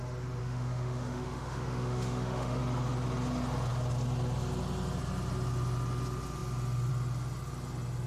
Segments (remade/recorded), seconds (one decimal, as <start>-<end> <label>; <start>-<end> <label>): 0.0-0.4 recorded; 0.4-2.6 remade; 2.6-8.1 recorded